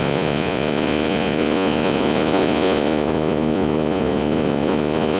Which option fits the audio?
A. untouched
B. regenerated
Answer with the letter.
B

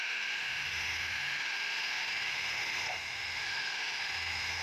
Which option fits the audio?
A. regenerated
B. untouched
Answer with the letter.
A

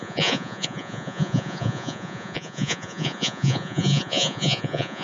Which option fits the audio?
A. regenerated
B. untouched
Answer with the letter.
A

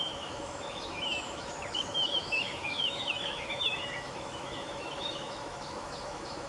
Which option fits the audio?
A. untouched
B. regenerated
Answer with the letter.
B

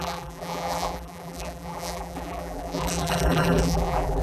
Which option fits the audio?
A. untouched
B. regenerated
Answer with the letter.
B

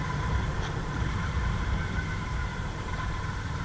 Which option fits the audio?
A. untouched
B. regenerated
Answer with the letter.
B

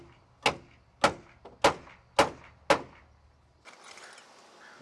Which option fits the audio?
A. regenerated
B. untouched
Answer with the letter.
B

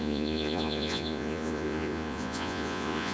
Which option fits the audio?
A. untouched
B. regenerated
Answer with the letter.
B